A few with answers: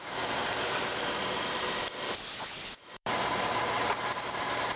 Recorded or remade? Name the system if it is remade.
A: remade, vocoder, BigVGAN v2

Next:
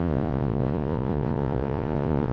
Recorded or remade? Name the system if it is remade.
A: remade, vocoder, Vocos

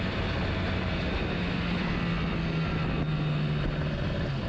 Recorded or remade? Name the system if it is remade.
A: recorded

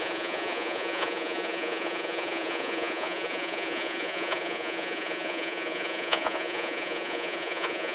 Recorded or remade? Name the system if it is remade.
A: remade, vocoder, Vocos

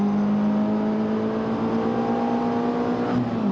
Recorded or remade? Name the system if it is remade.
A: recorded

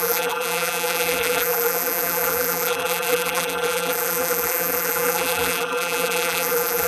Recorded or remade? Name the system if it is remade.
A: remade, vocoder, BigVGAN v2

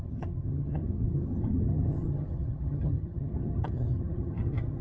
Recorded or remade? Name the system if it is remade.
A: remade, vocoder, HiFi-GAN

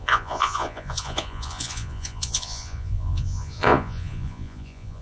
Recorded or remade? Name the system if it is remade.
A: remade, vocoder, Vocos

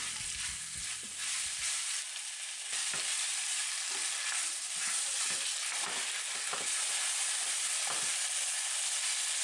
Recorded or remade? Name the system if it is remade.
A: recorded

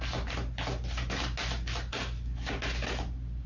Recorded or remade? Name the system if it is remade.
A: recorded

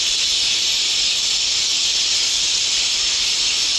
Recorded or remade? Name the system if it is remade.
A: recorded